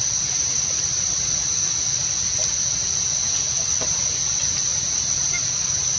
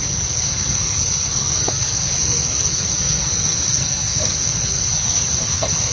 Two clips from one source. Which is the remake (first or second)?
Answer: second